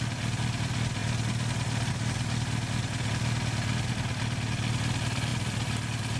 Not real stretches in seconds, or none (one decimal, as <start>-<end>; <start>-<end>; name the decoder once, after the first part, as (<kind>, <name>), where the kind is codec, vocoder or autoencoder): none